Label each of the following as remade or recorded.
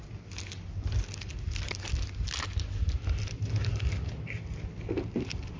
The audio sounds recorded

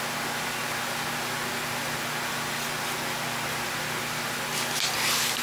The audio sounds recorded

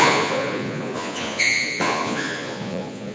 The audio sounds remade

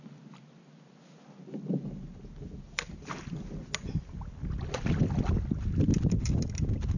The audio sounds recorded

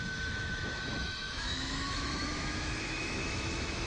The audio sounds remade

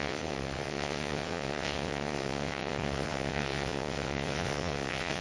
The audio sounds remade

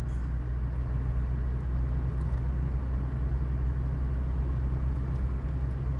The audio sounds recorded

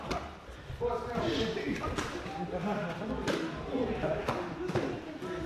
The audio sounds recorded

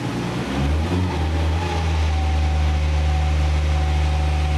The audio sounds recorded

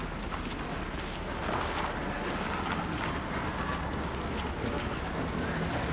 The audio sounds recorded